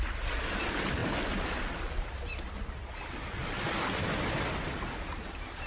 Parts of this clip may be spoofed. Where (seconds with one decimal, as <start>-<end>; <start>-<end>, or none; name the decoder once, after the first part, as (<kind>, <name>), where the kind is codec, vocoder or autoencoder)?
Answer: none